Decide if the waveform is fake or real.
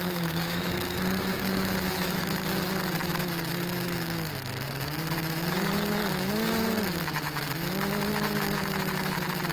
fake